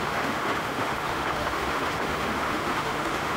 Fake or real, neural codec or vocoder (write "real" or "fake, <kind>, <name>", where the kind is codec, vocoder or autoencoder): fake, autoencoder, DAC-VAE